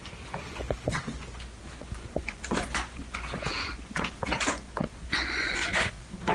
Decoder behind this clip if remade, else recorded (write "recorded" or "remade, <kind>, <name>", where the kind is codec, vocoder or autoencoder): remade, vocoder, Vocos